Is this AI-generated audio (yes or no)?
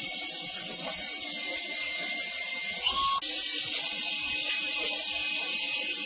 no